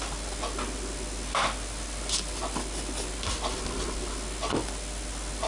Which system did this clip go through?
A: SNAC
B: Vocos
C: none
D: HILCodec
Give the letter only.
C